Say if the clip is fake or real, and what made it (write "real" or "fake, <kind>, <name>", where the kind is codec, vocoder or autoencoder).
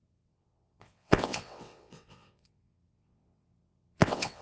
fake, vocoder, WaveNeXt